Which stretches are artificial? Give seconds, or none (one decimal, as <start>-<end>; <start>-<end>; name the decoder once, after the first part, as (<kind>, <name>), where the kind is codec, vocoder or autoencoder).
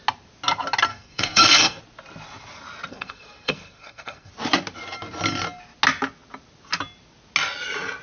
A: 0.9-1.8 (codec, SNAC); 2.9-4.3